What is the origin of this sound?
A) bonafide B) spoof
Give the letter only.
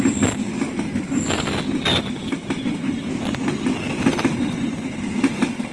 A